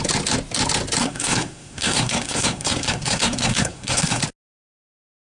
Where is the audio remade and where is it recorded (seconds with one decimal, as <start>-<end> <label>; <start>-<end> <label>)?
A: 0.0-1.0 recorded; 1.0-4.2 remade; 4.2-5.3 recorded